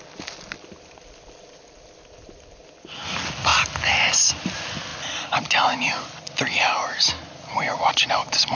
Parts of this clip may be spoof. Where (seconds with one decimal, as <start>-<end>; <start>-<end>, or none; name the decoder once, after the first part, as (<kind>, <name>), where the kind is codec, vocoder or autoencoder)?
none